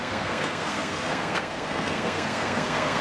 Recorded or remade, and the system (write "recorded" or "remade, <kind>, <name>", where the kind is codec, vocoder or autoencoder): remade, codec, SNAC